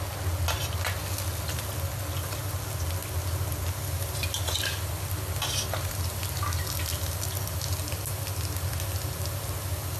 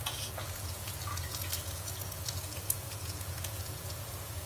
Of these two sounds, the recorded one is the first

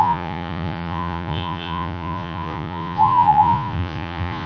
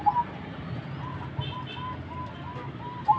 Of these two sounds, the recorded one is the second